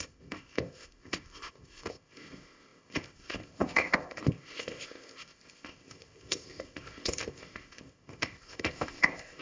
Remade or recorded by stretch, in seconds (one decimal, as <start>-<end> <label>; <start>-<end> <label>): 0.0-9.4 remade